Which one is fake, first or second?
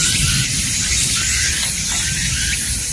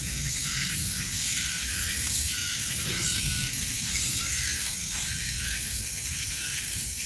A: second